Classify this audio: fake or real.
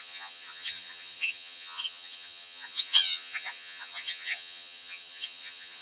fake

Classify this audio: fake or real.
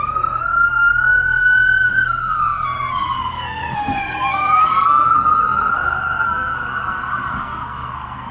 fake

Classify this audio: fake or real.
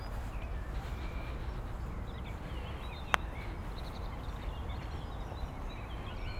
real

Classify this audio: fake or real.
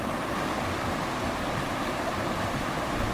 real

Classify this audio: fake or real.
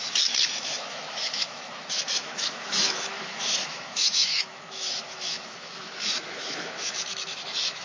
fake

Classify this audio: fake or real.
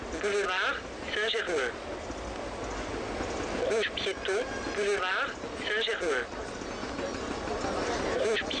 real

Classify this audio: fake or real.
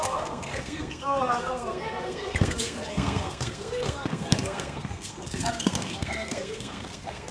fake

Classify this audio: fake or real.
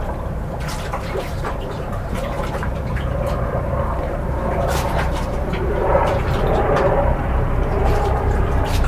fake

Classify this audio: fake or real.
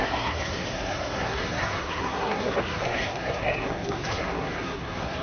fake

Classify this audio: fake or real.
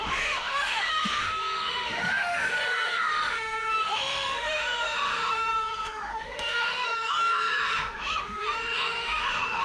fake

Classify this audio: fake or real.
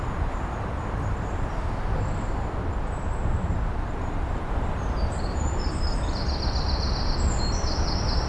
fake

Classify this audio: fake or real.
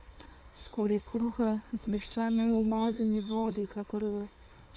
fake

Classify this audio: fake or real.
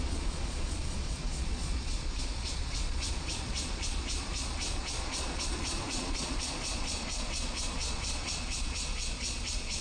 fake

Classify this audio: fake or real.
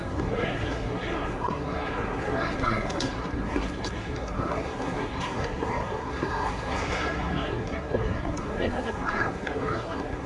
fake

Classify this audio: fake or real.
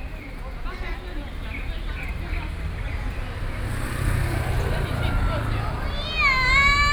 real